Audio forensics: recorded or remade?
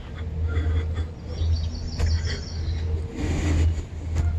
recorded